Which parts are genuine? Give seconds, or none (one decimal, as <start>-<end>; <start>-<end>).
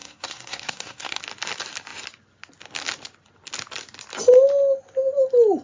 1.2-5.6